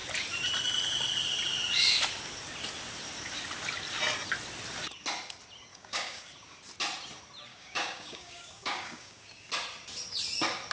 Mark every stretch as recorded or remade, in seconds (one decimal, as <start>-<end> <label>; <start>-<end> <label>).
0.0-5.7 recorded; 5.7-6.3 remade; 6.3-7.5 recorded; 7.5-9.5 remade; 9.5-10.7 recorded

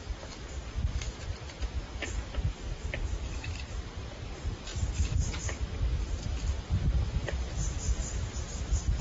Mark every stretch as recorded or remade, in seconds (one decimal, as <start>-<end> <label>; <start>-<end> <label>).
0.0-4.0 remade; 4.0-9.0 recorded

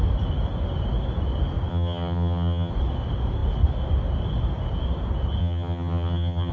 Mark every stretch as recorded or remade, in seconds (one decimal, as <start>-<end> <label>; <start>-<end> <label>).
0.0-1.7 recorded; 1.7-2.7 remade; 2.7-5.4 recorded; 5.4-6.5 remade

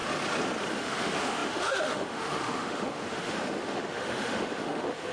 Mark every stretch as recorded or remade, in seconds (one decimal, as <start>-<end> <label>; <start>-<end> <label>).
0.0-0.7 recorded; 0.7-5.1 remade

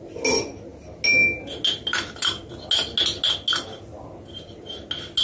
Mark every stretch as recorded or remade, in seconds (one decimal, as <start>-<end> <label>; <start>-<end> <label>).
0.0-5.2 recorded